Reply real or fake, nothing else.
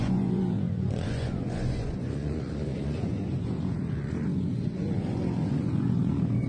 fake